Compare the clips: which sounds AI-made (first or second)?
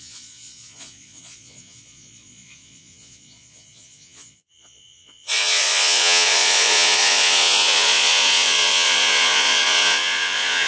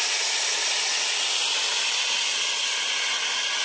first